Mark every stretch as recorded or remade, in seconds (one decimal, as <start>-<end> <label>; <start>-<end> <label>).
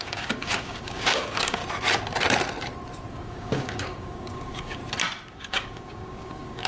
0.0-1.6 remade; 1.6-3.1 recorded; 3.1-4.8 remade; 4.8-5.3 recorded; 5.3-6.7 remade